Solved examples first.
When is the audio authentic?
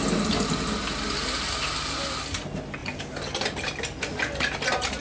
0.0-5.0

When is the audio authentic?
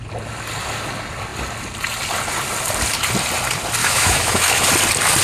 0.0-3.8; 4.6-5.2